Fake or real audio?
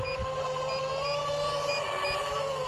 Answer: real